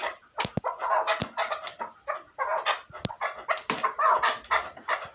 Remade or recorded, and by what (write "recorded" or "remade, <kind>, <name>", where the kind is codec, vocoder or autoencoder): recorded